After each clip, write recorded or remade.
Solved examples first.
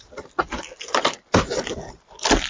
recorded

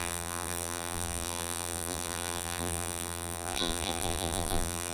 remade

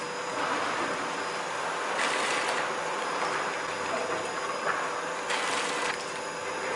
recorded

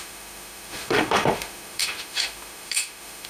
remade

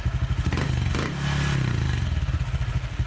recorded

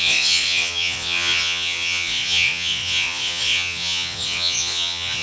remade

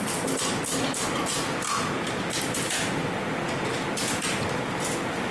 recorded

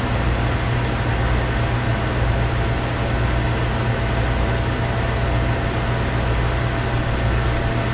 recorded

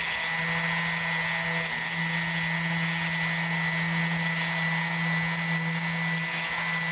recorded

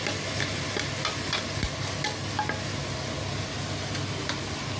recorded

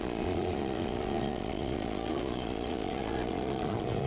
remade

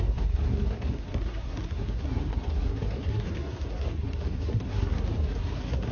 remade